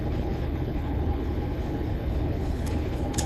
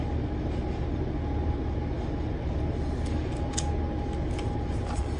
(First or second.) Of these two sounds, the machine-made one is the first